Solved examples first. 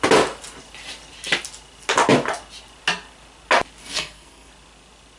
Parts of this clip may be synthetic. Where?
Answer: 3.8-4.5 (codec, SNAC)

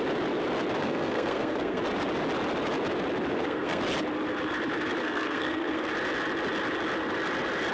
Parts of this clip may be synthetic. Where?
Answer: 0.8-1.8 (codec, SNAC); 3.3-3.8; 5.0-5.9

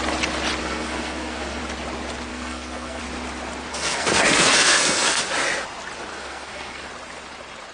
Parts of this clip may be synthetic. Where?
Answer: 0.6-1.6 (codec, SNAC); 2.3-3.0; 3.7-5.2; 6.1-6.9

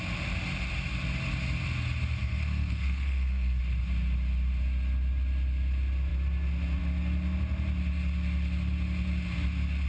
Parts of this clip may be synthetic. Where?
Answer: 2.2-3.6 (codec, SNAC)

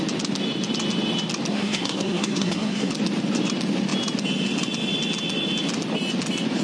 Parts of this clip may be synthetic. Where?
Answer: 1.5-2.9 (codec, SNAC)

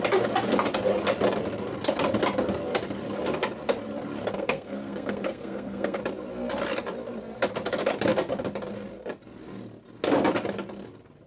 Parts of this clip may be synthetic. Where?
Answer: 4.3-6.0 (codec, SNAC)